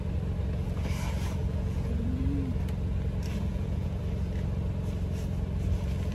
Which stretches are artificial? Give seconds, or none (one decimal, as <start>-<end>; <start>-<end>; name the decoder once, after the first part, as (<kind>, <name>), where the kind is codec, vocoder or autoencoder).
1.4-2.2 (vocoder, Vocos); 3.5-4.0